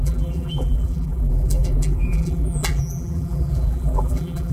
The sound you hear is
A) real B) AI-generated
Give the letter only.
B